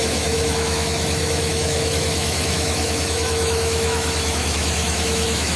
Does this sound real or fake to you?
fake